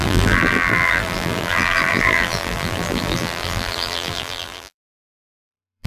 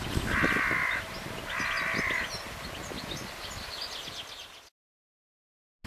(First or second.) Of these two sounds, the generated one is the first